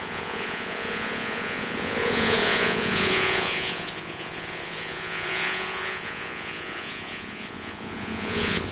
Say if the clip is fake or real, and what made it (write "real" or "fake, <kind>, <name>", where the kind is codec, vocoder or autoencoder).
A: fake, vocoder, Vocos